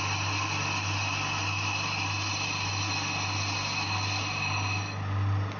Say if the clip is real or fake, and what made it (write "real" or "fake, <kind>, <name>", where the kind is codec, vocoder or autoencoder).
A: real